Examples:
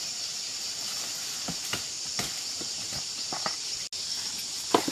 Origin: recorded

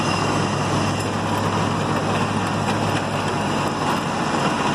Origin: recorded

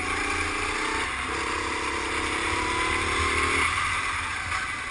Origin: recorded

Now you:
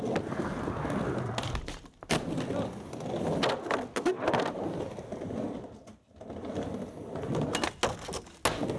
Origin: recorded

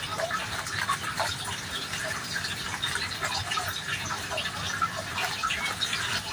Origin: recorded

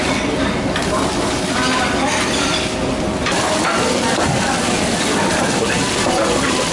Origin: remade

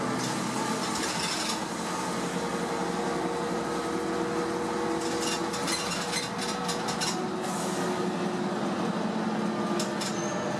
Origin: recorded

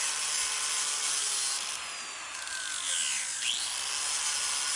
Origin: recorded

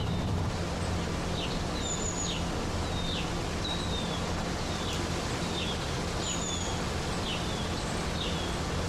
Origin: recorded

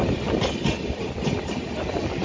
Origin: recorded